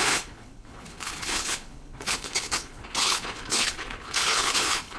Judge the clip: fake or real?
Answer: fake